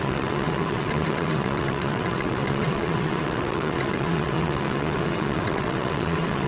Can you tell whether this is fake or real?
fake